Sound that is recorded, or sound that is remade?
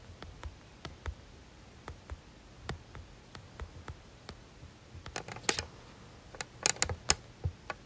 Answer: recorded